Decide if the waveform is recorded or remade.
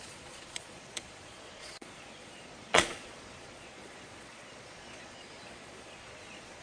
remade